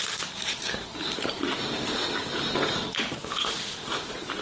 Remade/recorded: remade